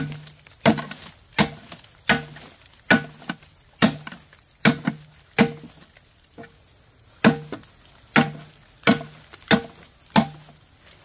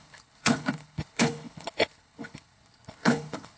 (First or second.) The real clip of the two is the first